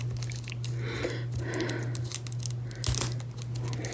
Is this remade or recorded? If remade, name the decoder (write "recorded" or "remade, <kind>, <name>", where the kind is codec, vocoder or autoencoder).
recorded